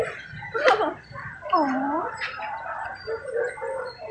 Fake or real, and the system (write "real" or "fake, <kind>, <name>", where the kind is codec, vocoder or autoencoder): real